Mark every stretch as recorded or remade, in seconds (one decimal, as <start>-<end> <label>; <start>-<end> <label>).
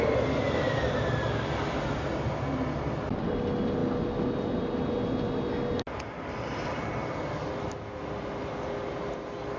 0.0-9.6 recorded